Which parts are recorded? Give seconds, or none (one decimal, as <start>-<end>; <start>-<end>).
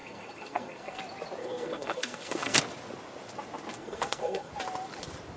1.0-1.4; 2.6-3.7; 4.5-5.4